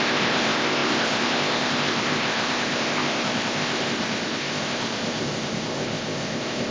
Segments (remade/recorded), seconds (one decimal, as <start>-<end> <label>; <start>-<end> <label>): 0.0-6.7 remade

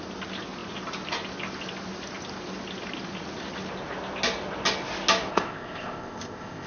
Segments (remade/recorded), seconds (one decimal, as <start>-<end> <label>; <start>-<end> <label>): 0.0-5.3 recorded; 5.3-6.7 remade

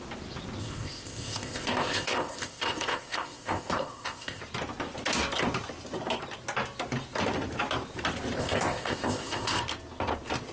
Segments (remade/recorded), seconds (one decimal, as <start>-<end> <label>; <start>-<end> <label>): 0.0-0.6 recorded; 0.6-4.4 remade; 4.4-8.4 recorded; 8.4-9.6 remade; 9.6-10.5 recorded

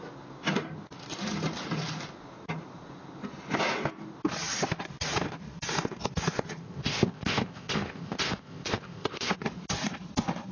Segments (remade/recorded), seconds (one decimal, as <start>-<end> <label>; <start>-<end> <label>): 0.0-6.6 recorded; 6.6-9.3 remade; 9.3-10.5 recorded

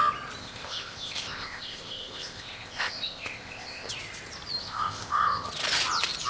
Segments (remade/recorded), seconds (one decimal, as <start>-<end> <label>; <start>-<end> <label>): 0.0-0.4 recorded; 0.4-3.9 remade; 3.9-4.6 recorded; 4.6-5.5 remade; 5.5-6.3 recorded

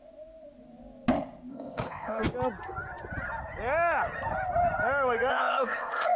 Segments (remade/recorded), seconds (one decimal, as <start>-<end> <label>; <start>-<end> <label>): 0.0-1.5 recorded; 1.5-2.2 remade; 2.2-5.3 recorded; 5.3-6.2 remade